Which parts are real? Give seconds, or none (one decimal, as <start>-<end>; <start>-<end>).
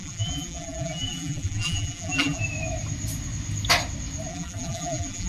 2.4-4.3